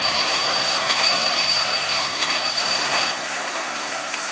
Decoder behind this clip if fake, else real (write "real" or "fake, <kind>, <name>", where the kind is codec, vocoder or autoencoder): fake, codec, SNAC